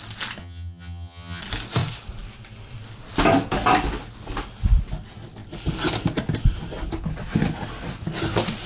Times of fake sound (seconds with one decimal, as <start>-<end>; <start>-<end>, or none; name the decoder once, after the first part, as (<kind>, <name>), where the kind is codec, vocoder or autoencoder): 0.4-1.4 (vocoder, HiFi-GAN)

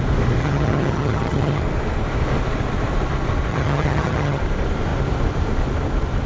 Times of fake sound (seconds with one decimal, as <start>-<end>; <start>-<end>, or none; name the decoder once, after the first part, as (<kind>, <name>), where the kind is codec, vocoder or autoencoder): 0.4-1.6 (vocoder, HiFi-GAN); 3.5-4.4

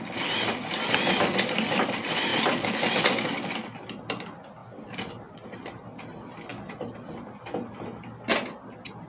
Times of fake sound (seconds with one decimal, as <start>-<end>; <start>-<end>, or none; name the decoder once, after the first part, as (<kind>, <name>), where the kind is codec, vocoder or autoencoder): none

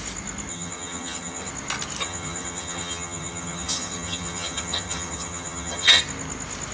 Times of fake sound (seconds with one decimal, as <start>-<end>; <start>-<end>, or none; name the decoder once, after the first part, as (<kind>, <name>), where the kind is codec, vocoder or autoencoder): 0.5-1.5 (vocoder, HiFi-GAN); 2.0-6.0

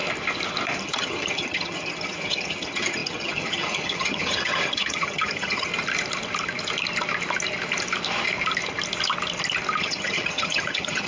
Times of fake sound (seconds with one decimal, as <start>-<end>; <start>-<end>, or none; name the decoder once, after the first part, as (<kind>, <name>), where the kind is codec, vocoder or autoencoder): 0.8-5.7 (vocoder, HiFi-GAN); 9.8-11.1

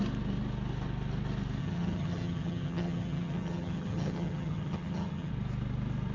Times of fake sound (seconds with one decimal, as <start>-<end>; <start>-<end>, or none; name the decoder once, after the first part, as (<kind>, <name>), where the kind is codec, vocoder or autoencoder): 1.6-5.3 (vocoder, HiFi-GAN)